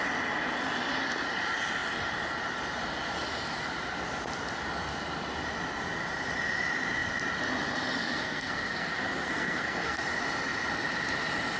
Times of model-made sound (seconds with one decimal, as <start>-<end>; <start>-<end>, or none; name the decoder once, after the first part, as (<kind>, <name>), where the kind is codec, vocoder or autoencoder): 8.0-10.0 (codec, SNAC)